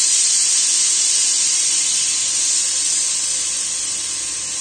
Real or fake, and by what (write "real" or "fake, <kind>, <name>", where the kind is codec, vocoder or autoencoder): real